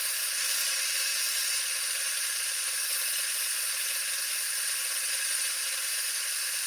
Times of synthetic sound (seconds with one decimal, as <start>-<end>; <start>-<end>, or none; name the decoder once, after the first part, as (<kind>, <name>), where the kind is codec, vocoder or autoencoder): 0.0-1.1 (vocoder, BigVGAN v2); 1.8-2.2; 3.6-5.9